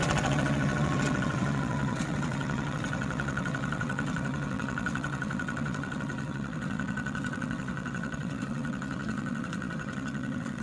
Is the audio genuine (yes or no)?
no